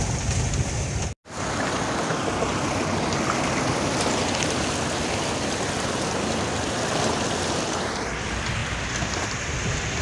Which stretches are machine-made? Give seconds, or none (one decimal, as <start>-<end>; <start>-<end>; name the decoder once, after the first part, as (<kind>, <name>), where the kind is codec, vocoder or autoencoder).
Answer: none